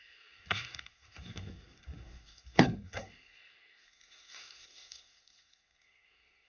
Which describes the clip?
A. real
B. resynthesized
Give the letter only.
B